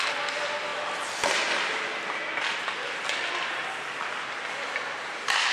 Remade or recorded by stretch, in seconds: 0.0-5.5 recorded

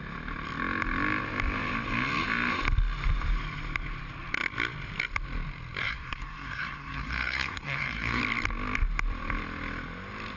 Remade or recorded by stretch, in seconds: 0.0-5.8 recorded; 5.8-8.2 remade; 8.2-10.4 recorded

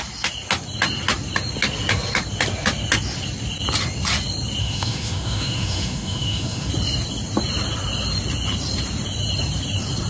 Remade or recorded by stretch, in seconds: 0.0-4.6 recorded; 4.6-6.7 remade; 6.7-10.1 recorded